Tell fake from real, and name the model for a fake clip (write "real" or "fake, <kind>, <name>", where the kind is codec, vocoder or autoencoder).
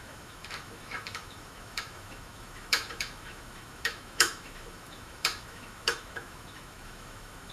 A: fake, autoencoder, DAC-VAE